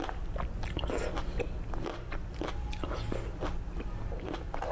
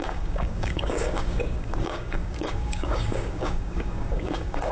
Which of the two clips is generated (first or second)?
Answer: second